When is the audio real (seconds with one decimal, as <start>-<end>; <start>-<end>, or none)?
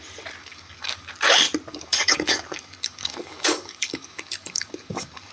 0.0-0.4; 1.1-1.7